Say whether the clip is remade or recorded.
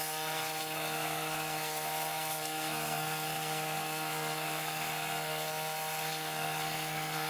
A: remade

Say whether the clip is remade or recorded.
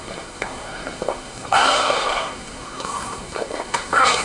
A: remade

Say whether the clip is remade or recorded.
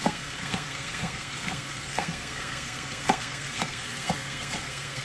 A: remade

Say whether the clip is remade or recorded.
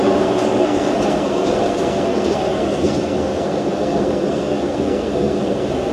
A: remade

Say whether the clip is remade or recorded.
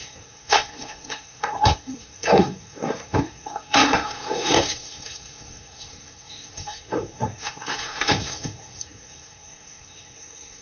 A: remade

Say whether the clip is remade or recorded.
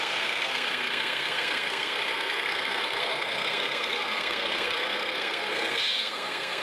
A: remade